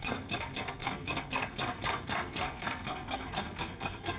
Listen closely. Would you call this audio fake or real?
fake